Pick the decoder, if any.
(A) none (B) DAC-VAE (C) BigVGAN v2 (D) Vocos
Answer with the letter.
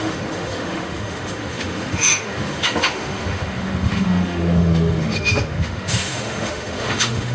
B